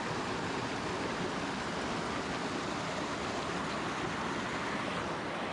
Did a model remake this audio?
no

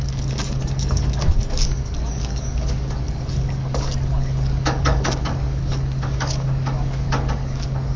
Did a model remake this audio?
yes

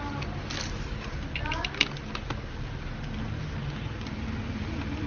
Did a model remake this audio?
no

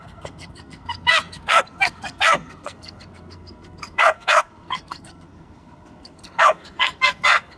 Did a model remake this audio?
yes